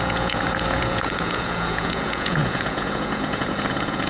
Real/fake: fake